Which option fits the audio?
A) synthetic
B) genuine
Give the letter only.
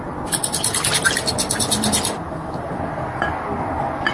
B